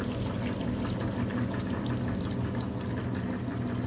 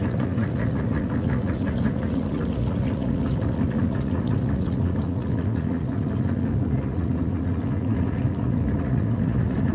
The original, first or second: first